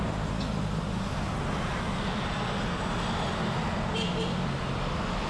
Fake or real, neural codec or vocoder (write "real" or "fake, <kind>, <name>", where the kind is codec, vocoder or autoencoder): real